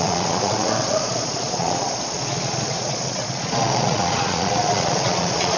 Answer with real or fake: fake